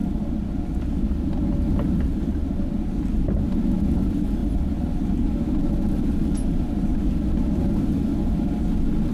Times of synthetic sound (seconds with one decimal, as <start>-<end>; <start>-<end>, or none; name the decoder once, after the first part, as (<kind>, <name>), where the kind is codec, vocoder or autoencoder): none